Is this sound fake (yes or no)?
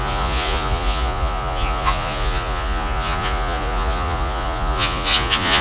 yes